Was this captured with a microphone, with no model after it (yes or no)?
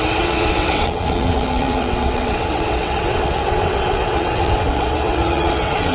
no